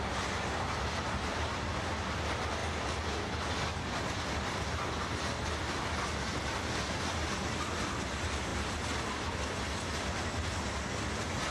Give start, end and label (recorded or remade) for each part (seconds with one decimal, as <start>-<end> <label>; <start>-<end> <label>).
0.0-11.5 recorded